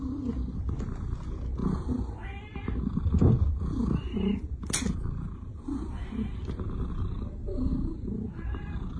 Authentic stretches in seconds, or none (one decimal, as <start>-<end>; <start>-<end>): 0.0-9.0